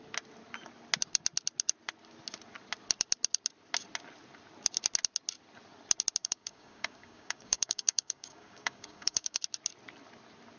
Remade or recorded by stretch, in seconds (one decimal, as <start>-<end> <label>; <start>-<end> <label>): 0.0-6.2 recorded; 6.2-9.4 remade; 9.4-10.6 recorded